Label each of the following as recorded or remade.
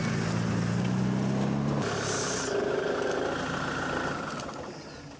recorded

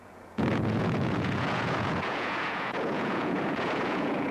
remade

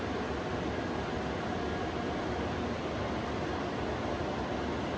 recorded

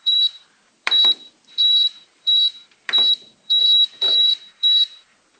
remade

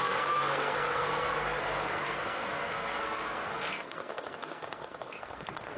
remade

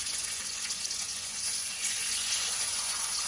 remade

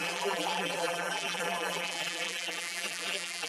remade